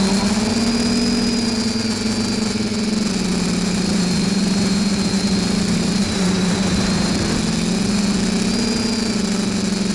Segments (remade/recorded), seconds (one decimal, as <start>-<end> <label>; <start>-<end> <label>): 0.0-3.3 recorded; 3.3-7.2 remade; 7.2-9.9 recorded